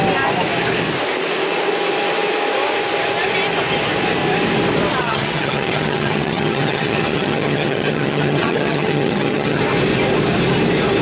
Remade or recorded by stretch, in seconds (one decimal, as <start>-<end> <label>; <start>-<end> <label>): 0.0-5.0 recorded; 5.0-9.6 remade; 9.6-11.0 recorded